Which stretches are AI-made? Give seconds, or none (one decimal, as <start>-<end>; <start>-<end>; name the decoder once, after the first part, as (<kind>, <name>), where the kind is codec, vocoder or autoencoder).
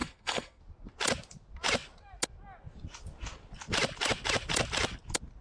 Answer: 0.0-0.6 (codec, SNAC)